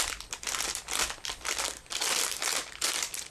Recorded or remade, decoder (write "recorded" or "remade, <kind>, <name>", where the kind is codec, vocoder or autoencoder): remade, vocoder, BigVGAN v2